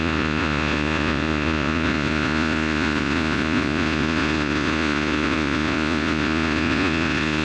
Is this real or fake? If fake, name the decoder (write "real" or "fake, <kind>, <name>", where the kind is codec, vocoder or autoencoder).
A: fake, vocoder, Vocos